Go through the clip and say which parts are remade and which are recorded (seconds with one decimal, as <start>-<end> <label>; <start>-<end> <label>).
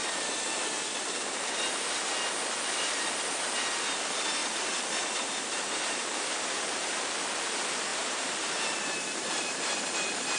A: 0.0-1.5 remade; 1.5-4.4 recorded; 4.4-7.1 remade; 7.1-7.9 recorded; 7.9-9.8 remade; 9.8-10.4 recorded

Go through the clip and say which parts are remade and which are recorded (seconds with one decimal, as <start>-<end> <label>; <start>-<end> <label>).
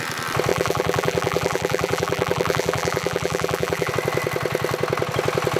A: 0.0-0.5 recorded; 0.5-3.9 remade; 3.9-5.6 recorded